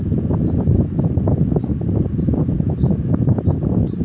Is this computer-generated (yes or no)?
no